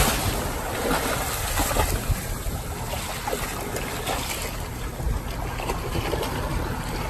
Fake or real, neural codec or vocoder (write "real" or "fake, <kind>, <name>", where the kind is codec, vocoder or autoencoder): real